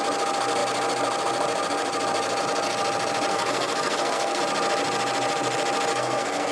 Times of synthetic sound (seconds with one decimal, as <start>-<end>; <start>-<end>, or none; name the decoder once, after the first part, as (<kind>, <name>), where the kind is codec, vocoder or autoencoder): 3.3-4.4 (codec, SNAC); 5.9-6.5